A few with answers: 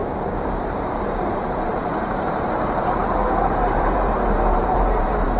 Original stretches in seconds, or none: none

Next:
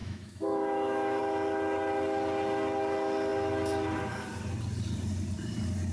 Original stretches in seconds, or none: 1.2-5.9

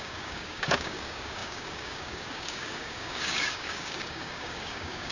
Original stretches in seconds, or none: none

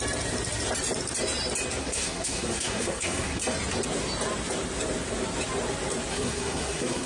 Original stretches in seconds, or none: 0.0-1.8; 3.4-6.1

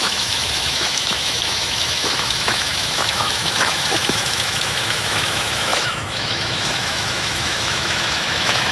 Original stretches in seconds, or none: none

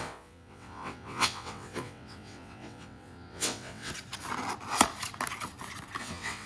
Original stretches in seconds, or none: 3.9-6.0